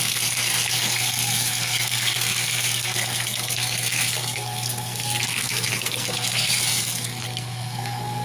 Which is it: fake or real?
fake